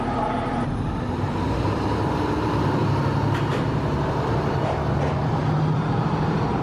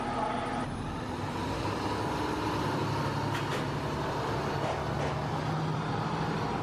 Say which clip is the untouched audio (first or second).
second